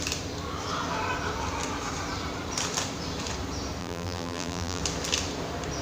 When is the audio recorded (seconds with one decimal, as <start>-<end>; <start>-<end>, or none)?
0.0-3.8; 4.8-5.8